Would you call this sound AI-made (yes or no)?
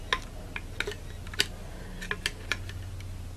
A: no